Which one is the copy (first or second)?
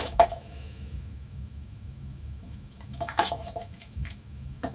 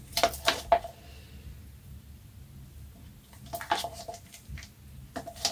first